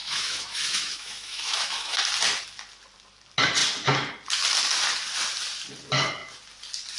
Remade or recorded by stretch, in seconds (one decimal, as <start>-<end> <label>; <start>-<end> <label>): 0.0-2.0 remade; 2.0-7.0 recorded